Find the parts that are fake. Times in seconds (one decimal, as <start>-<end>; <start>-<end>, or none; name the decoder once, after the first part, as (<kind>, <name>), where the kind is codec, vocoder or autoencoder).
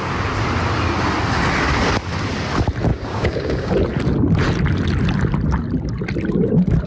2.9-3.7 (codec, DAC)